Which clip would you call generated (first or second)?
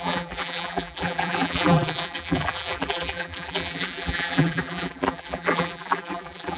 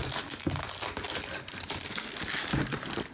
first